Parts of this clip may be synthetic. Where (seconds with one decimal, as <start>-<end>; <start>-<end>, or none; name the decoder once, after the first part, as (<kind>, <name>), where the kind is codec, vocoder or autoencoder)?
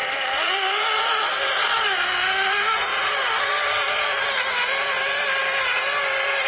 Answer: 0.0-1.4 (vocoder, BigVGAN v2); 2.9-3.4; 3.8-5.4